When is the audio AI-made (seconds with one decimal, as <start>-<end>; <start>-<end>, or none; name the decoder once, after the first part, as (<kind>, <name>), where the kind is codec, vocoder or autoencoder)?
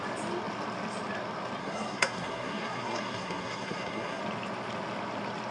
1.6-4.2 (codec, SNAC)